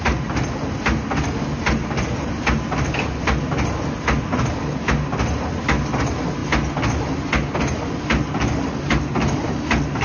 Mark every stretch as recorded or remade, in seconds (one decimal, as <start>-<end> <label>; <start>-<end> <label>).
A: 0.0-10.0 recorded